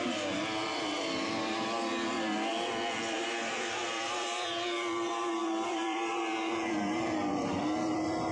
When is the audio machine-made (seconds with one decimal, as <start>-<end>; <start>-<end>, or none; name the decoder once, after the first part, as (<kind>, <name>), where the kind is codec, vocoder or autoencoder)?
0.0-8.3 (vocoder, BigVGAN v2)

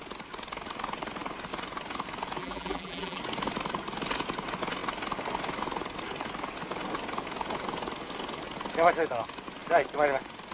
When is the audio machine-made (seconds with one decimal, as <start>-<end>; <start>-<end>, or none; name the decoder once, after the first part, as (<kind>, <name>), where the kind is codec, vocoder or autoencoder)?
2.4-3.2 (vocoder, BigVGAN v2)